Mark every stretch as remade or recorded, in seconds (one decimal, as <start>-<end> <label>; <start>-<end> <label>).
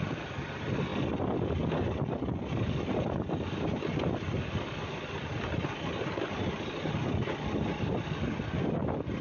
0.0-9.2 recorded